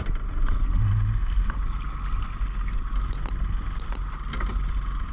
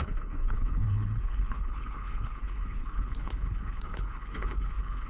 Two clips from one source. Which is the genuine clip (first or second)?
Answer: first